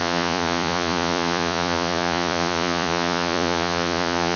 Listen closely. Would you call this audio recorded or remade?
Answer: remade